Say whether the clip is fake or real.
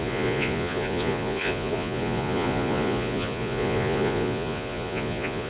fake